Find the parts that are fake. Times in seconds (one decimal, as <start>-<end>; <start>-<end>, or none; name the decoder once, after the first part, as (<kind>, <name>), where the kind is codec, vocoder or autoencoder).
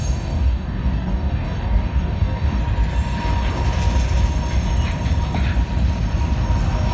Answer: 0.0-2.6 (codec, DAC)